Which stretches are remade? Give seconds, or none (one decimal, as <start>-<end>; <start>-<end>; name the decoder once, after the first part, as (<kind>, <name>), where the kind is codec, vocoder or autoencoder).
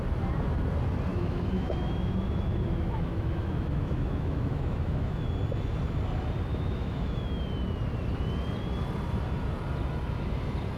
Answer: 1.1-5.3 (autoencoder, DAC-VAE); 6.5-7.4